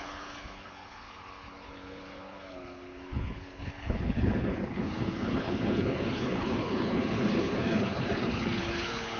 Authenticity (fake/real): fake